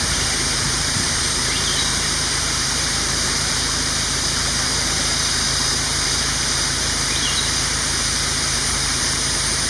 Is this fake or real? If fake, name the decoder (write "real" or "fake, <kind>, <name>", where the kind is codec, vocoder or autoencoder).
fake, vocoder, BigVGAN v2